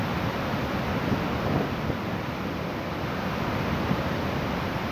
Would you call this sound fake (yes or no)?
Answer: no